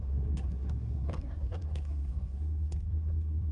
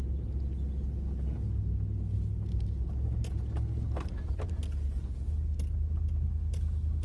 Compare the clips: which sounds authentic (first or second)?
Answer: second